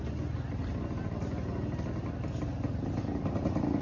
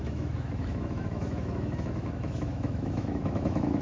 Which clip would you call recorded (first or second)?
first